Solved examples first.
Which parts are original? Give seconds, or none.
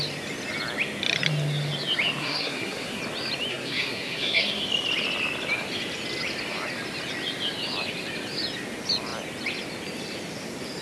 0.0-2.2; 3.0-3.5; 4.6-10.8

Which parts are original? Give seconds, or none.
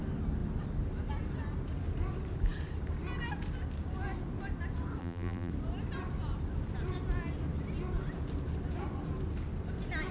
0.0-5.0; 5.5-10.1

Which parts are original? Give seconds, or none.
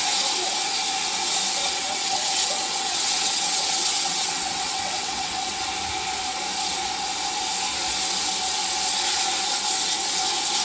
0.0-1.6; 5.6-10.6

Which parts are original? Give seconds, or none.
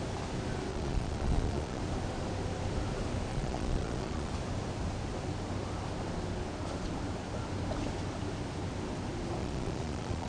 0.0-0.7; 1.8-3.3; 4.3-9.4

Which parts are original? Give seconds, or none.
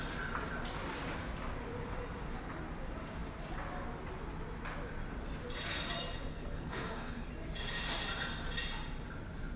0.0-6.3; 7.3-9.6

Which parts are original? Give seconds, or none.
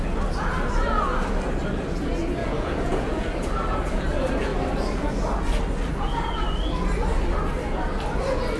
0.0-2.4; 3.2-8.6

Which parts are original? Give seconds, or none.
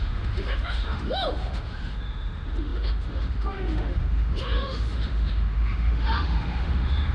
none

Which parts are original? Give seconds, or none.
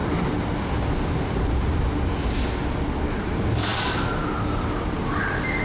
0.0-0.8; 2.6-3.2